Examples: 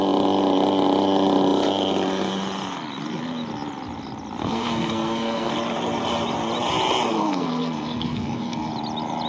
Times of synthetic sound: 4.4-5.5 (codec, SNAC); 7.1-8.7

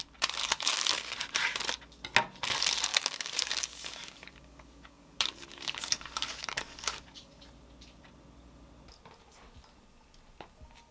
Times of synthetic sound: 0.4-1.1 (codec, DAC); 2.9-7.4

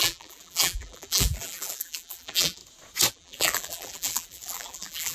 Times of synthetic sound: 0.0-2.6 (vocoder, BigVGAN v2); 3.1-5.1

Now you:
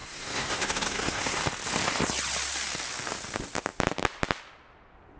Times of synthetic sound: 0.0-1.4 (codec, SNAC)